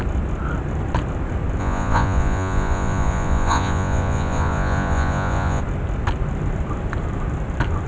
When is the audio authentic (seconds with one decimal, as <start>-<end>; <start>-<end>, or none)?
0.0-1.6; 5.6-7.9